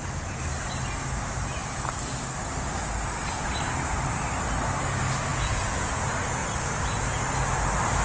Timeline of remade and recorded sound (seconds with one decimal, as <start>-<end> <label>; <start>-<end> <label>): 0.0-5.3 recorded; 5.3-5.9 remade; 5.9-8.0 recorded